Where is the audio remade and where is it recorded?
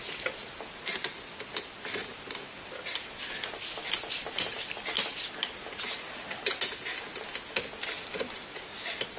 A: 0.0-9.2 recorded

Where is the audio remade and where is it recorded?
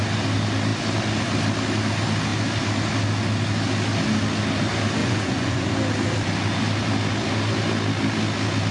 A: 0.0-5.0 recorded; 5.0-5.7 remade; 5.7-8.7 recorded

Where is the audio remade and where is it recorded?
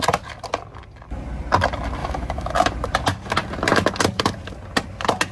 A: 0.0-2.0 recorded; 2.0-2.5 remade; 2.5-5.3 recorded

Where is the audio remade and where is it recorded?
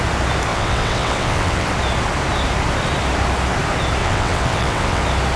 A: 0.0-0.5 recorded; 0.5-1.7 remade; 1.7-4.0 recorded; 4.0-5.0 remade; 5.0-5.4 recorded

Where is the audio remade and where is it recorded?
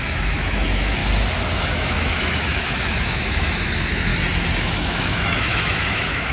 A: 0.0-1.0 remade; 1.0-1.6 recorded; 1.6-4.1 remade; 4.1-4.6 recorded; 4.6-6.3 remade